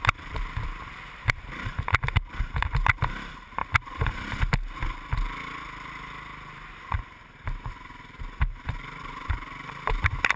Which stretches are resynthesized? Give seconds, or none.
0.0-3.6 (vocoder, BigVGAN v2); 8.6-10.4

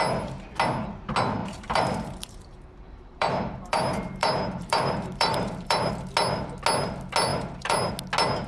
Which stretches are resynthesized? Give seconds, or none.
1.4-5.9 (vocoder, BigVGAN v2); 7.3-7.9

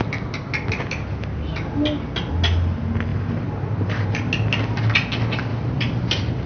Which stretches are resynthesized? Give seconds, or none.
3.1-4.3 (vocoder, BigVGAN v2); 5.5-6.1

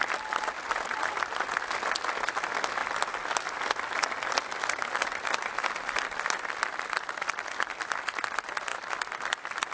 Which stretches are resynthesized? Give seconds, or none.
none

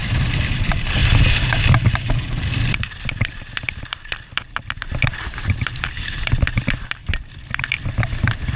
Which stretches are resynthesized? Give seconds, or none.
0.0-1.0 (vocoder, BigVGAN v2); 2.7-8.6

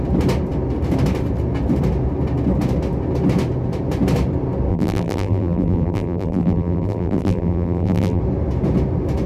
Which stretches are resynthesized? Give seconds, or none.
4.7-8.2 (vocoder, BigVGAN v2)